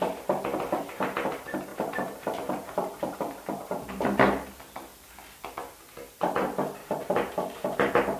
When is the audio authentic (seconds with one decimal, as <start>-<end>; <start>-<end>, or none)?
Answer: 0.0-1.7; 4.5-6.8